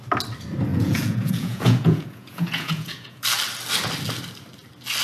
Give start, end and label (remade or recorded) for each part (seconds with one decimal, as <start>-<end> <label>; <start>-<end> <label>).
0.0-0.7 recorded; 0.7-3.2 remade; 3.2-5.0 recorded